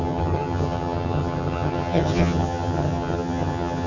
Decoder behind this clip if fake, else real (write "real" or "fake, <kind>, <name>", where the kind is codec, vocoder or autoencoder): fake, vocoder, HiFi-GAN